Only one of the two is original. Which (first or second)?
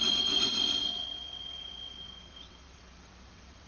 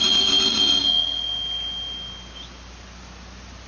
second